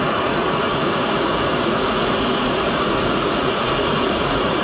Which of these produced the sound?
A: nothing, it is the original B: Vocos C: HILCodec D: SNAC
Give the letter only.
B